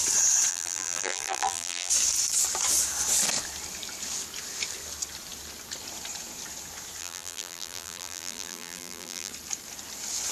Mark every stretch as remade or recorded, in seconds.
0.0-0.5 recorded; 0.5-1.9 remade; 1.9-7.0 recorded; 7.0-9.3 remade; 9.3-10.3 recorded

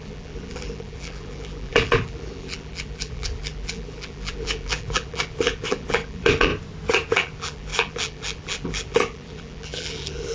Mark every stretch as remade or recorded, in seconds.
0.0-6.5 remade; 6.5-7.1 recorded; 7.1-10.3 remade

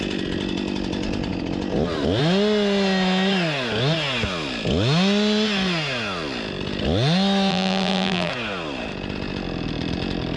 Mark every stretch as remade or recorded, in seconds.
0.0-7.5 recorded; 7.5-8.3 remade; 8.3-10.4 recorded

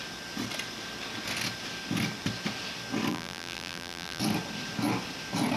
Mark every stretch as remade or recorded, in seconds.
0.0-3.1 recorded; 3.1-4.2 remade; 4.2-5.6 recorded

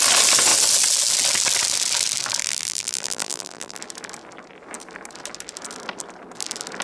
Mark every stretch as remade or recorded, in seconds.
0.0-2.4 recorded; 2.4-3.8 remade; 3.8-6.8 recorded

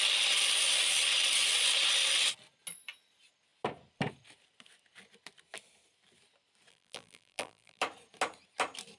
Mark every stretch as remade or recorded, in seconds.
0.0-6.7 recorded; 6.7-7.8 remade; 7.8-9.0 recorded

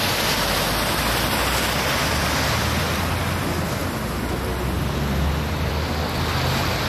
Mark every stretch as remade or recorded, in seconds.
0.0-6.9 recorded

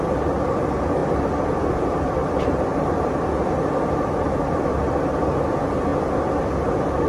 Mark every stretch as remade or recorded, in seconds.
0.0-1.0 recorded; 1.0-2.3 remade; 2.3-7.1 recorded